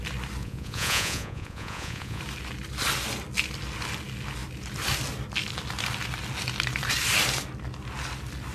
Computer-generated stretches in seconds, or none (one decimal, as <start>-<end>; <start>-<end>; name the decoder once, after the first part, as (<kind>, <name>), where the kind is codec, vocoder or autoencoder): 0.4-2.2 (vocoder, Vocos)